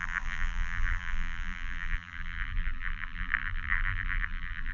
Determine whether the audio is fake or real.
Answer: fake